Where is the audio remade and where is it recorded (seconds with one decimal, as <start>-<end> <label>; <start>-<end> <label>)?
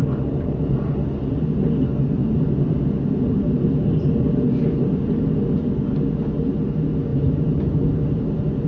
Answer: 0.0-7.1 recorded; 7.1-8.7 remade